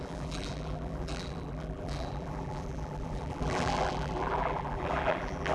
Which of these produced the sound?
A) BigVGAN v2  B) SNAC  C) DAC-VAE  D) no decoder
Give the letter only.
A